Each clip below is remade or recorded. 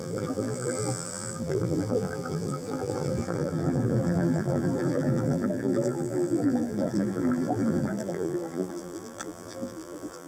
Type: remade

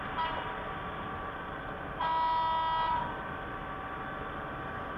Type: recorded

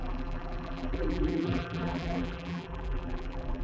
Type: remade